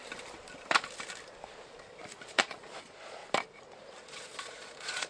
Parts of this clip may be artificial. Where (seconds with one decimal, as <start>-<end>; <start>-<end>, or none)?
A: 2.3-3.2; 4.0-5.1